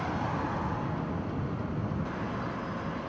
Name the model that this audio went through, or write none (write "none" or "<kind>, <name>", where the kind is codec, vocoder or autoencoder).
none